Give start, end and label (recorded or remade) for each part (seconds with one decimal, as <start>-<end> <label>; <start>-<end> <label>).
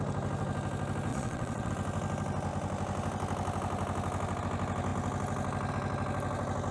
0.0-1.1 recorded; 1.1-1.7 remade; 1.7-6.7 recorded